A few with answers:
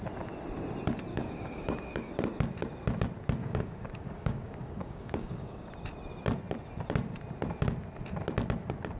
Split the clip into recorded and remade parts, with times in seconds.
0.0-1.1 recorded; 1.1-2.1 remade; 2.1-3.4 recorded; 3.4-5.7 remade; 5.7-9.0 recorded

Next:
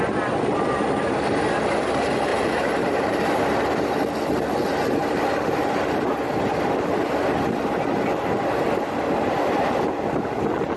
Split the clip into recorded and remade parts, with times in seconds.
0.0-2.3 recorded; 2.3-3.5 remade; 3.5-5.0 recorded; 5.0-6.2 remade; 6.2-10.8 recorded

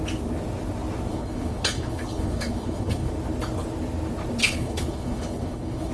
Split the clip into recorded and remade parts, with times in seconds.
0.0-1.1 recorded; 1.1-3.1 remade; 3.1-4.4 recorded; 4.4-5.9 remade

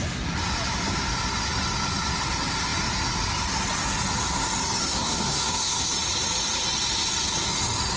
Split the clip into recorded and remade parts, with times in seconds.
0.0-4.8 recorded; 4.8-5.8 remade; 5.8-8.0 recorded

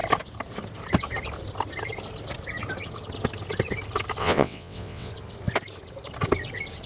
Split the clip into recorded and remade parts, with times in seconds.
0.0-4.2 recorded; 4.2-5.1 remade; 5.1-6.9 recorded

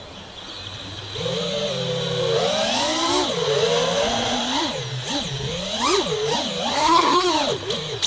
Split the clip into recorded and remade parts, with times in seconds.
0.0-6.7 recorded; 6.7-7.3 remade; 7.3-8.1 recorded